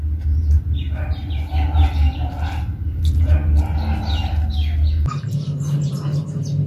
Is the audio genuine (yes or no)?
yes